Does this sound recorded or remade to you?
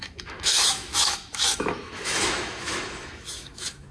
remade